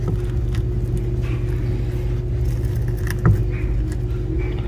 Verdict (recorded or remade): recorded